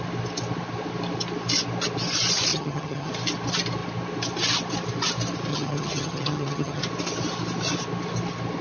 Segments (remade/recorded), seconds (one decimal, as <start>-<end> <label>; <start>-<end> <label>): 0.0-2.5 recorded; 2.5-3.1 remade; 3.1-5.5 recorded; 5.5-6.8 remade; 6.8-8.6 recorded